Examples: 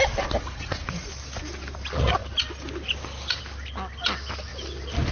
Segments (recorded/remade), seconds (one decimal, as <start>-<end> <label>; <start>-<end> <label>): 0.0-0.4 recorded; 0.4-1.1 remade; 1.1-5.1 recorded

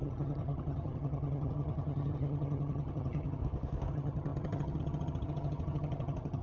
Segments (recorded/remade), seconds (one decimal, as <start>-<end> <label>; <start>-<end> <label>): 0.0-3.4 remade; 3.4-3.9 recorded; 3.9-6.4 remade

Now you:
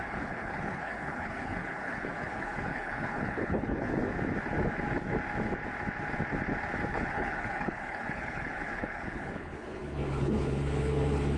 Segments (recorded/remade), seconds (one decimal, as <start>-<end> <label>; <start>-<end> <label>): 0.0-3.9 remade; 3.9-6.9 recorded; 6.9-11.4 remade